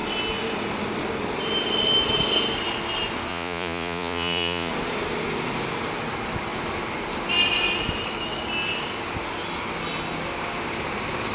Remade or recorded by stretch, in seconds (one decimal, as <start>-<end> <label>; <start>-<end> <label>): 0.0-3.3 recorded; 3.3-4.7 remade; 4.7-11.3 recorded